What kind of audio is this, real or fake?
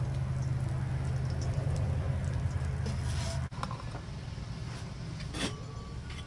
real